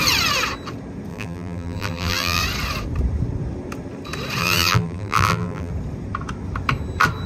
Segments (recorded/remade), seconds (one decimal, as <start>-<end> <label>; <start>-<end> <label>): 0.0-1.1 recorded; 1.1-2.4 remade; 2.4-4.4 recorded; 4.4-5.7 remade; 5.7-7.3 recorded